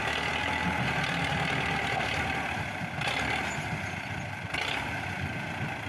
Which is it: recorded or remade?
recorded